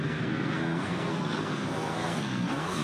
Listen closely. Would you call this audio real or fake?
fake